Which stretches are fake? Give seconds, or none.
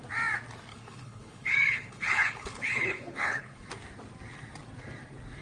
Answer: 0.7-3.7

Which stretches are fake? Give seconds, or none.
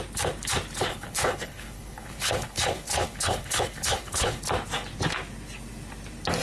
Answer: 0.9-4.4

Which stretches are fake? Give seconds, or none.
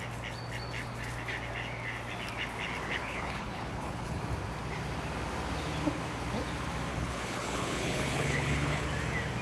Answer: 3.0-4.2; 6.9-8.9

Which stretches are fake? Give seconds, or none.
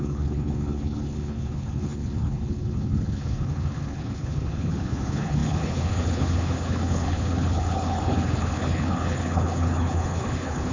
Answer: 0.0-10.7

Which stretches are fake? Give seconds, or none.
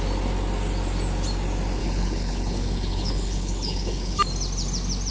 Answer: 1.8-4.2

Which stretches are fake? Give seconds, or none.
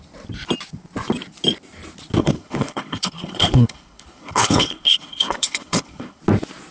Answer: 2.2-6.2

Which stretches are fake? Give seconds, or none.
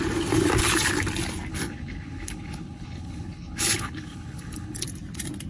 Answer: 1.5-4.8